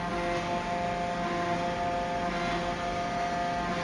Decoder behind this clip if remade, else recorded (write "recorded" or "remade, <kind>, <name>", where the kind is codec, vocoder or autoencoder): recorded